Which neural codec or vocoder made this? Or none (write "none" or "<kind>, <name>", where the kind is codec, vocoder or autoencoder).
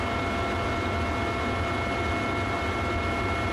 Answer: none